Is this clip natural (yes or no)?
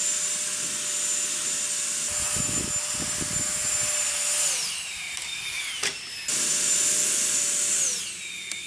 yes